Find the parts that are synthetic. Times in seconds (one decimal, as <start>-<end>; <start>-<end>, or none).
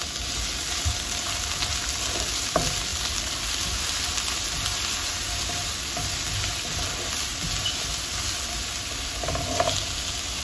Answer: none